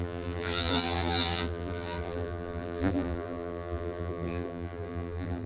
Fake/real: fake